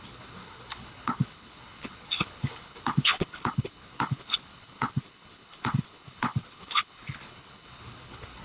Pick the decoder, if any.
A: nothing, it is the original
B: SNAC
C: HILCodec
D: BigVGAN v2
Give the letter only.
C